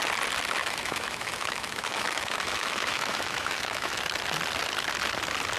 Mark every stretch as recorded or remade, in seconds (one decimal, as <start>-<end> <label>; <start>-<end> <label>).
0.0-0.6 recorded; 0.6-4.0 remade; 4.0-5.6 recorded